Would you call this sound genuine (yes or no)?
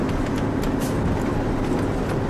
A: yes